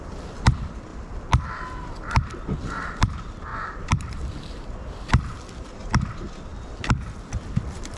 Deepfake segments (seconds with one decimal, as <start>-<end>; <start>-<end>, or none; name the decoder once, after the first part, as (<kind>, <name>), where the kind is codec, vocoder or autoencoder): 0.0-0.9 (vocoder, BigVGAN v2); 1.8-8.0